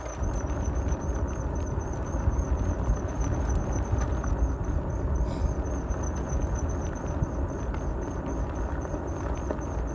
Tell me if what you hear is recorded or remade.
recorded